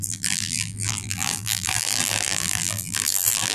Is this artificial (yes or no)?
yes